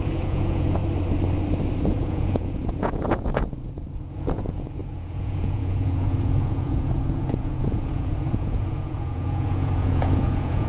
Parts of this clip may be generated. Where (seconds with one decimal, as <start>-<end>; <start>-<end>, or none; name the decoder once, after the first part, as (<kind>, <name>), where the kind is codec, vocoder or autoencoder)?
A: 0.0-0.8 (vocoder, Vocos); 1.9-10.7